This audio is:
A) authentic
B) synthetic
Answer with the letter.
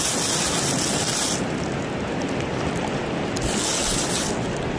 A